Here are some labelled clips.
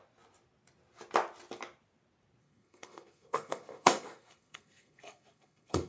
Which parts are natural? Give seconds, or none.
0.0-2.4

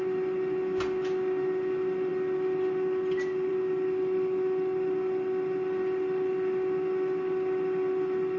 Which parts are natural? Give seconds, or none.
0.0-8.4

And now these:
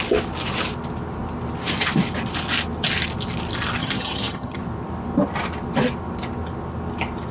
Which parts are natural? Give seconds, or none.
0.0-3.8; 4.6-7.3

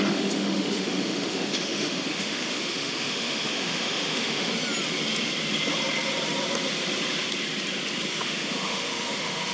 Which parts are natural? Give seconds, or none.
4.5-8.1

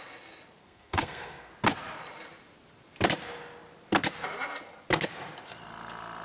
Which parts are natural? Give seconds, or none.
0.0-0.6; 1.5-6.2

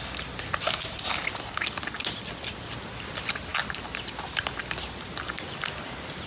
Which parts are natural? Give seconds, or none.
0.0-3.5; 4.4-6.3

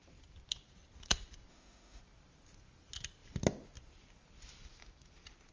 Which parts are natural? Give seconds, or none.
0.0-1.5; 2.0-5.5